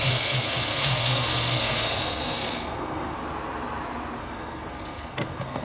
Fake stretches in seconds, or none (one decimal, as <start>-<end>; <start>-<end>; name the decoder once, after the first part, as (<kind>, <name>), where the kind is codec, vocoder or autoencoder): 0.0-3.2 (codec, SNAC); 4.2-5.6